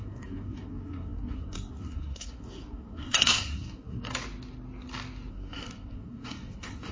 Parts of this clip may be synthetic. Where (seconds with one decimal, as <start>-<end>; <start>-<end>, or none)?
0.0-4.1; 5.3-6.9